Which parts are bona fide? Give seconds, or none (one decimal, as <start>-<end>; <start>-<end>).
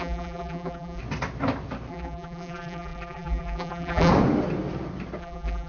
1.0-1.9; 4.1-5.2